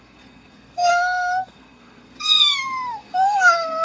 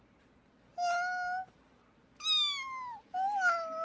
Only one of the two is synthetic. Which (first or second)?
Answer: first